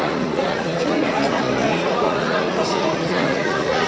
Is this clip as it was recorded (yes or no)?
no